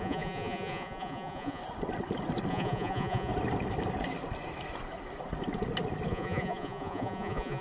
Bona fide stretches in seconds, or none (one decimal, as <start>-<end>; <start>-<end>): 1.6-2.5; 3.3-6.1